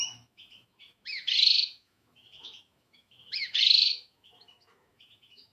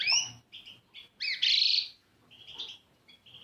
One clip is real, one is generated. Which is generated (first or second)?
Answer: first